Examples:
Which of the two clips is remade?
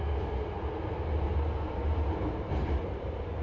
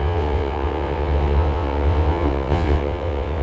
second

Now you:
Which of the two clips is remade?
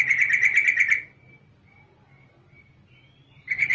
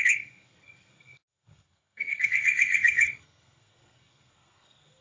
second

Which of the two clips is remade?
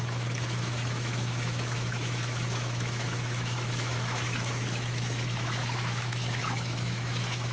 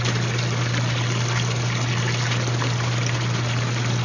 first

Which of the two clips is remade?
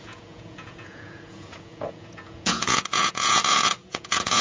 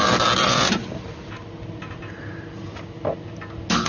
first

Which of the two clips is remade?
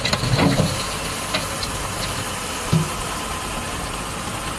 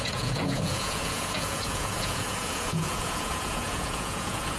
second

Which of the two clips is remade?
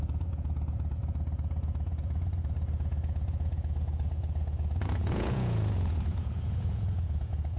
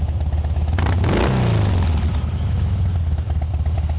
first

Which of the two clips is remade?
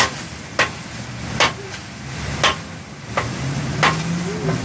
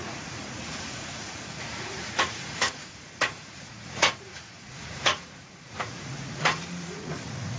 second